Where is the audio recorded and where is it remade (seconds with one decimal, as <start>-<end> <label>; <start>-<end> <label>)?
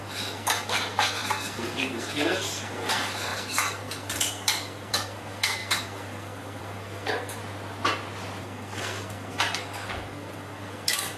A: 0.0-7.4 remade; 7.4-8.4 recorded; 8.4-11.2 remade